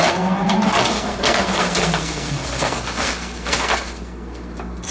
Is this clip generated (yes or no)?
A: yes